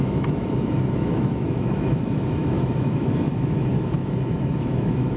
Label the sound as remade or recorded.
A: remade